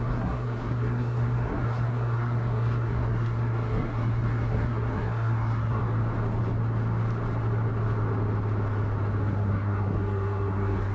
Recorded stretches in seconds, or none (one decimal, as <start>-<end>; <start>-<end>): 5.8-9.2